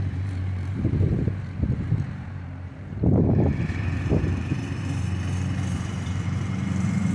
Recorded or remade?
remade